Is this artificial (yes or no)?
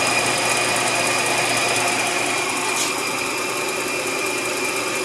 no